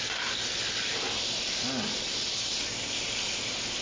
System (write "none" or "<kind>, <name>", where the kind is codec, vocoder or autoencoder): none